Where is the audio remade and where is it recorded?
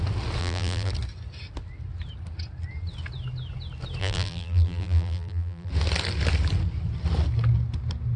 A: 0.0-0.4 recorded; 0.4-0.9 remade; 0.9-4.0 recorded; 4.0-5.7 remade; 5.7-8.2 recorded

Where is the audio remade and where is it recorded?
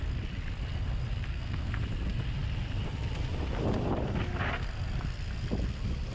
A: 0.0-1.3 recorded; 1.3-1.8 remade; 1.8-6.1 recorded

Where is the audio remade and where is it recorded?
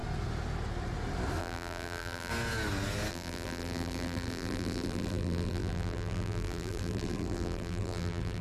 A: 0.0-1.4 recorded; 1.4-2.3 remade; 2.3-3.1 recorded; 3.1-8.4 remade